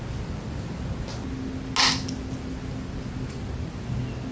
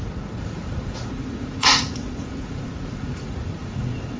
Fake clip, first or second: second